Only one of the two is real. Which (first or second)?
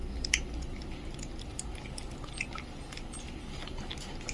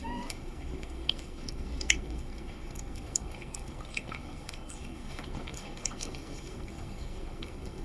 first